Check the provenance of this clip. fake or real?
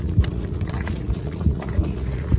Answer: fake